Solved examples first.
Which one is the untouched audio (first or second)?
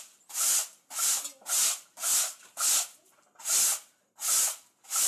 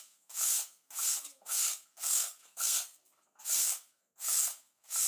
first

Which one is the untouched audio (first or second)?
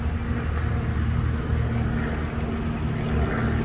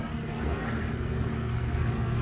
first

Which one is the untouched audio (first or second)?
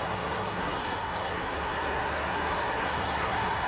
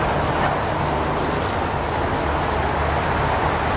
second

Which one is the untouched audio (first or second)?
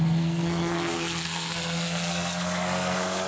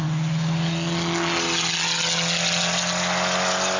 second